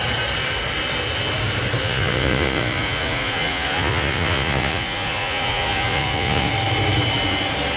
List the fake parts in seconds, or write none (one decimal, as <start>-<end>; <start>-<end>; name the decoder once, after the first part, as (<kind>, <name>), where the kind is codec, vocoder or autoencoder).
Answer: 1.8-6.5 (vocoder, Vocos)